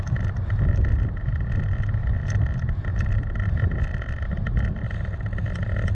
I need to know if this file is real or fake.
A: real